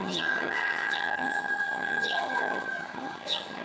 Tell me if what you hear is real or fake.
fake